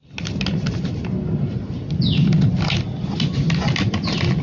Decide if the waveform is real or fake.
real